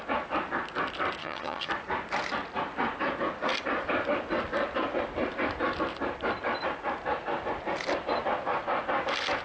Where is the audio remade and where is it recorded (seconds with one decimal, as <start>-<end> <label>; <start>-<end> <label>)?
0.0-1.2 recorded; 1.2-1.7 remade; 1.7-9.4 recorded